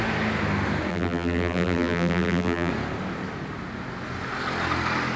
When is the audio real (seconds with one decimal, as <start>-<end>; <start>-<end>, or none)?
0.0-0.9; 2.7-5.2